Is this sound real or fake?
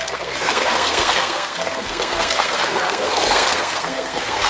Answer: fake